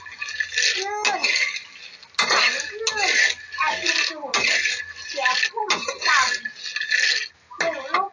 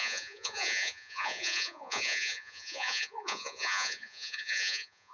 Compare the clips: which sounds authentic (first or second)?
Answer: first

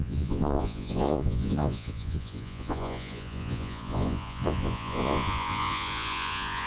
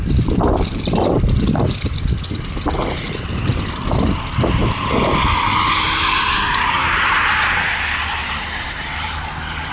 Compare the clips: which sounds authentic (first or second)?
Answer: second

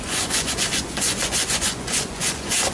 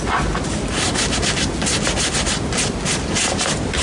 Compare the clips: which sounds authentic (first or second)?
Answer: second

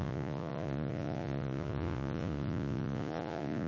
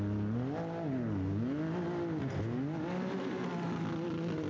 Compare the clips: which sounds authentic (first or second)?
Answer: second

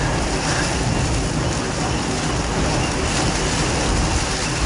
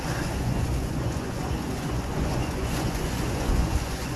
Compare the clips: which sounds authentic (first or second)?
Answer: first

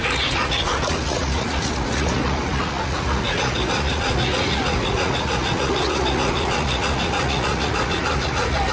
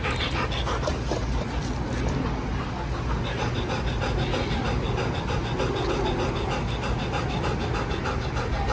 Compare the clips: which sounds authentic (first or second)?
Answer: second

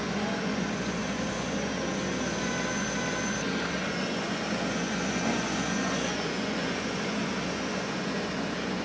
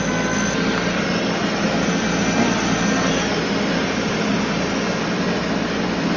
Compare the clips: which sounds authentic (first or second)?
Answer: second